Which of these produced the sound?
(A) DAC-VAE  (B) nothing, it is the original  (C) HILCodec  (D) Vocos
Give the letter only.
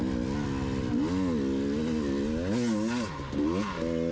B